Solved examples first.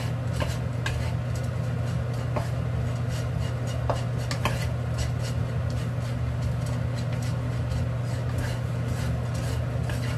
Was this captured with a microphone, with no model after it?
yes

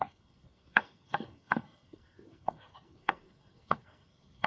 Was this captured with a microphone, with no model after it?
no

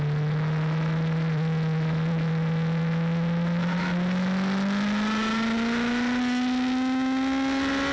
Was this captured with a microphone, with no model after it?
yes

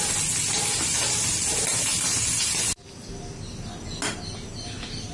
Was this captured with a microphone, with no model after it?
yes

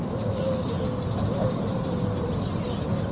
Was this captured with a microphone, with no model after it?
yes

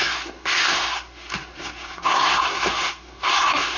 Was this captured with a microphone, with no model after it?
no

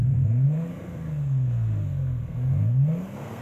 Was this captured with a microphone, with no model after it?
no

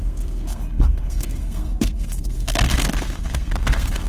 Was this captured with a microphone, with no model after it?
no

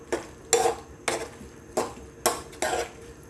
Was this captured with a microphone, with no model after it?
yes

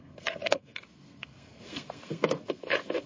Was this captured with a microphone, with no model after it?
no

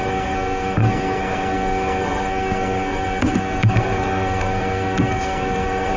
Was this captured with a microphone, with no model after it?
no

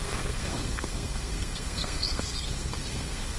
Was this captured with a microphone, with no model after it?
no